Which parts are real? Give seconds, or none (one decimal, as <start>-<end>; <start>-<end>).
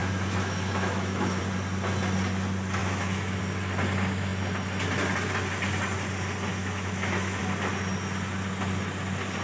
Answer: 1.4-2.8; 3.4-6.5; 7.4-9.4